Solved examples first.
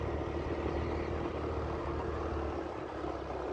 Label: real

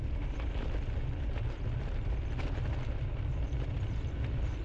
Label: real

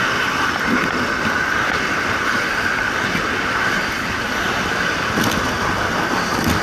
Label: real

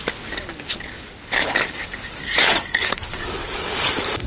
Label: fake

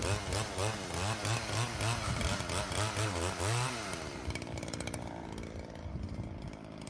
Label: real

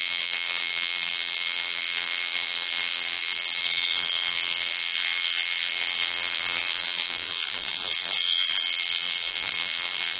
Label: fake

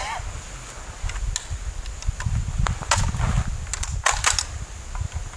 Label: real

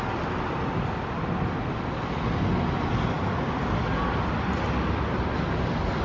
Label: real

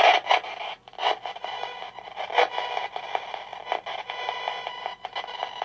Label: real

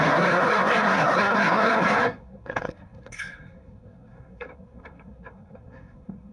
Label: fake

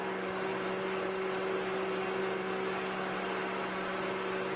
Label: real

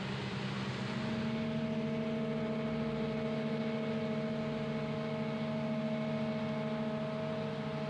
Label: real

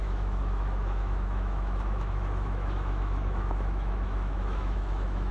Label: fake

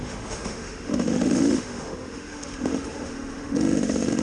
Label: fake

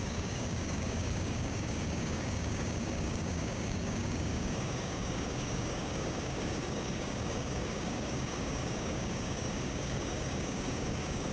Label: fake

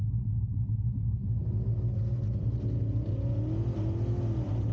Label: real